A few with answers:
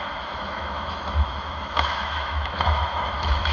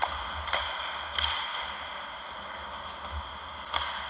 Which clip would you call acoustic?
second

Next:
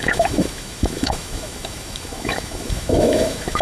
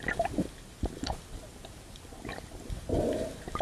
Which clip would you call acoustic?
second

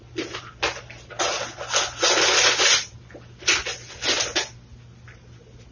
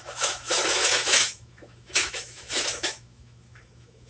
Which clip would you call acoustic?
first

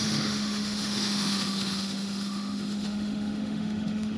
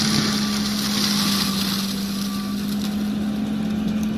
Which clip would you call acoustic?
second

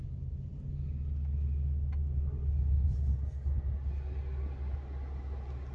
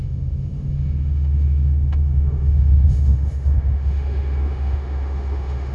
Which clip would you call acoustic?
first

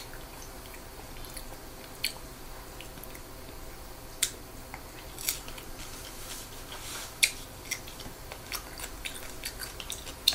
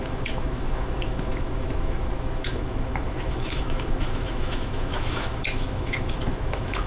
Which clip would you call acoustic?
first